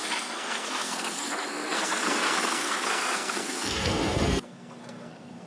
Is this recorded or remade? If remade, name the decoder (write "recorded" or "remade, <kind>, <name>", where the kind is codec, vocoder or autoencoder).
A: remade, codec, SNAC